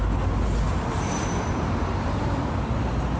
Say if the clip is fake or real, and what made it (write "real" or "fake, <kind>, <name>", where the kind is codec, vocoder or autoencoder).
real